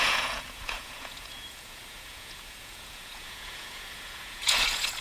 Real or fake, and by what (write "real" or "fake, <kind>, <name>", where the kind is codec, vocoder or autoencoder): fake, vocoder, Vocos